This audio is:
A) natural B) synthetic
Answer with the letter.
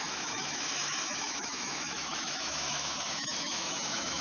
B